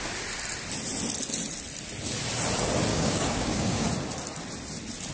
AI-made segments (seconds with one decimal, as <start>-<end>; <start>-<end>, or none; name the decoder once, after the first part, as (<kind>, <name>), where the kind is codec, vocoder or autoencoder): 2.9-3.9 (codec, DAC)